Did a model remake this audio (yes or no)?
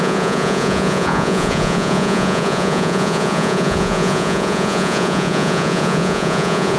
yes